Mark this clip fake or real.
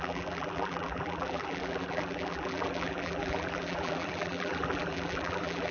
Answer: fake